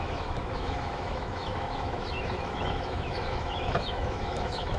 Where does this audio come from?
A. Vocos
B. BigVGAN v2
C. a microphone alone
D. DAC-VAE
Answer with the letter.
D